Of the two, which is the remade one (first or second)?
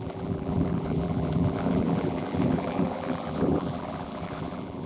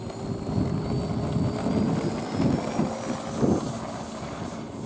first